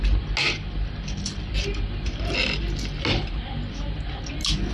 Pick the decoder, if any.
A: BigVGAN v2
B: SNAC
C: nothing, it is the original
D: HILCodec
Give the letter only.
C